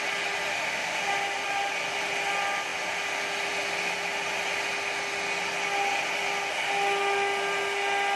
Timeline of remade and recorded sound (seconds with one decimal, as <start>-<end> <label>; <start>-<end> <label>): 0.0-0.5 recorded; 0.5-1.0 remade; 1.0-8.2 recorded